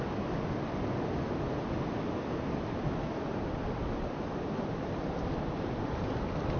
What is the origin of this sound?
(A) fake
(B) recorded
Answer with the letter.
B